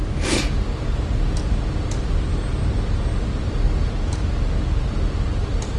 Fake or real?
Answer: real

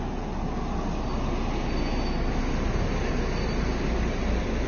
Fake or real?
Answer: real